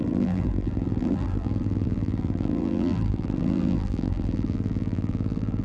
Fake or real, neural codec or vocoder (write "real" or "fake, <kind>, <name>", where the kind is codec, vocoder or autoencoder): fake, vocoder, BigVGAN v2